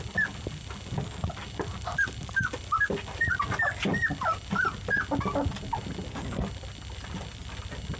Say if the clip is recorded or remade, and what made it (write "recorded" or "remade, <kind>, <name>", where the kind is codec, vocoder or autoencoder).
recorded